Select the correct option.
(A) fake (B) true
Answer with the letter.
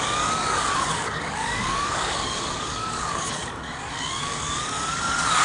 A